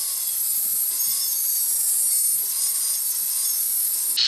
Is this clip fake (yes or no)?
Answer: no